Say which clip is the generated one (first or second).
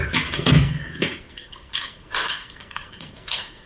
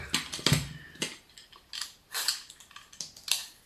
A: first